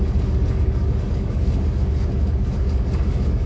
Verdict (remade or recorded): remade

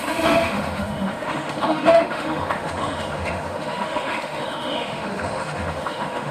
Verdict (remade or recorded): remade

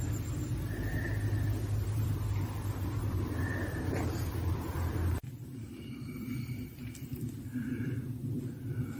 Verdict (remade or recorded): remade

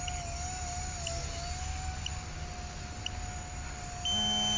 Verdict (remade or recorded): recorded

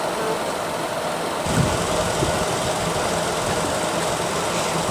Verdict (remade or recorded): recorded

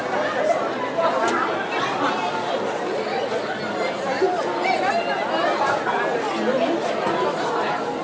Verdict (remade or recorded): recorded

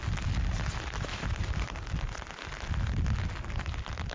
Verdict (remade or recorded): recorded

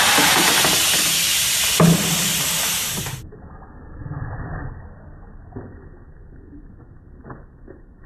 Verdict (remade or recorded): recorded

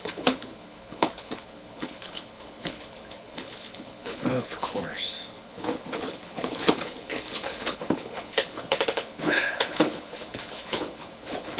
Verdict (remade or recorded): remade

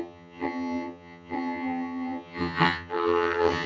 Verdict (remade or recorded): remade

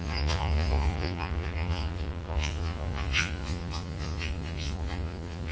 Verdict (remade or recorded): remade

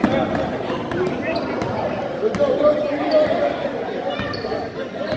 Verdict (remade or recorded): recorded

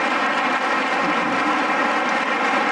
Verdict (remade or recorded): recorded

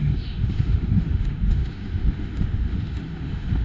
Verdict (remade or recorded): remade